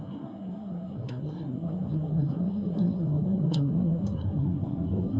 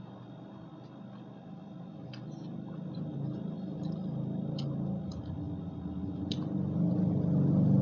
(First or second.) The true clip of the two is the second